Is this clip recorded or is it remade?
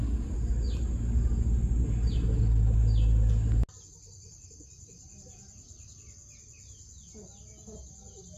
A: recorded